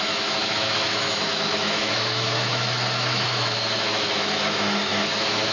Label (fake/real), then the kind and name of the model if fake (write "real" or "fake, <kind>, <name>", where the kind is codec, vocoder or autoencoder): fake, autoencoder, DAC-VAE